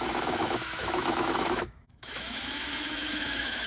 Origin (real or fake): fake